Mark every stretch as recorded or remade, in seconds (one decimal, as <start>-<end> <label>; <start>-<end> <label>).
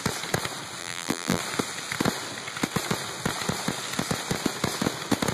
0.0-0.8 recorded; 0.8-1.4 remade; 1.4-5.3 recorded